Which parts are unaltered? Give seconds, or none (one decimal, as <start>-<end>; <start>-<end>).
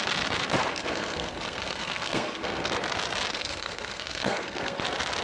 0.0-0.7; 2.7-3.3; 4.8-5.2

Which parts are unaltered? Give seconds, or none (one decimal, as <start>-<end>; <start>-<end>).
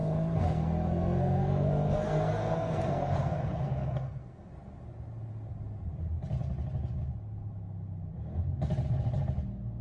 4.5-9.8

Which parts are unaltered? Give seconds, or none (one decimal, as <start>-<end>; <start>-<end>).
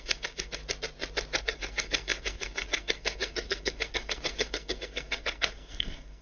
0.6-1.4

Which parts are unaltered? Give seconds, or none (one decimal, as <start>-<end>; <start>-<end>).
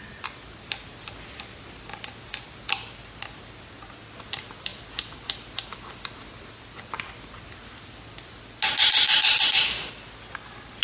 0.0-10.8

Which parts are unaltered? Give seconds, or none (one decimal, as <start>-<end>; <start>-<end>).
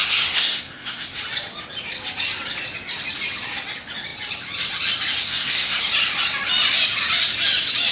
1.2-5.2; 5.8-7.9